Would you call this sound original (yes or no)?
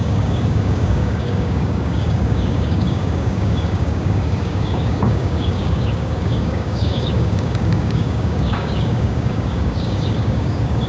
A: no